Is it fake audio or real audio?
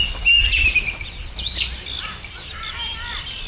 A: real